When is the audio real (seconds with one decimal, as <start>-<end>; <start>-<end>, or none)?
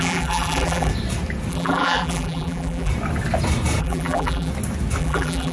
0.9-1.5; 2.9-3.8; 4.5-5.0